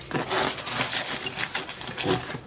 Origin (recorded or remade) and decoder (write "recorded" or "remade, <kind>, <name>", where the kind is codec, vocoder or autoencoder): recorded